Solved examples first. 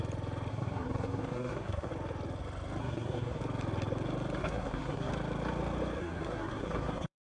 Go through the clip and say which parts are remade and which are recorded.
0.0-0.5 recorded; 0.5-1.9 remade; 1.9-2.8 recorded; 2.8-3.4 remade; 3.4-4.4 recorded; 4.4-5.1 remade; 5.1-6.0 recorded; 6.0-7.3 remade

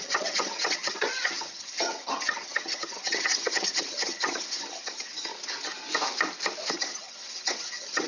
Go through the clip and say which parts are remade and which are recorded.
0.0-5.3 remade; 5.3-6.7 recorded; 6.7-8.1 remade

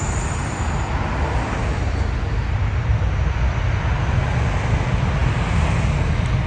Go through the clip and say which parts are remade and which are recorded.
0.0-6.5 recorded

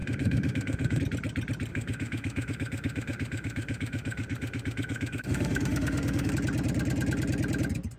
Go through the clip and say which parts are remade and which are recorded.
0.0-1.0 remade; 1.0-1.7 recorded; 1.7-6.3 remade; 6.3-8.0 recorded

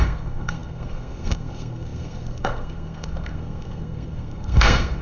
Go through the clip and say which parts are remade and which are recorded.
0.0-5.0 remade

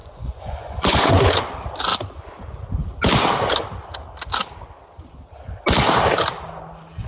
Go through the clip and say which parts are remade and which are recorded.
0.0-1.1 remade; 1.1-7.1 recorded

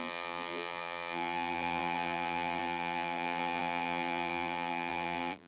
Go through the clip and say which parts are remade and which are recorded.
0.0-5.5 remade

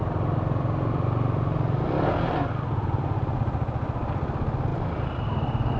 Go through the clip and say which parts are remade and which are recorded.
0.0-5.8 recorded